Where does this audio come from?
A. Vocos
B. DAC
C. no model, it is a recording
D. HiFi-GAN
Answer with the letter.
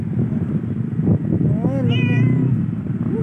C